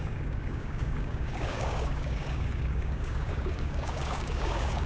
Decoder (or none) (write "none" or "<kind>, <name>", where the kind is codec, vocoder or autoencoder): codec, DAC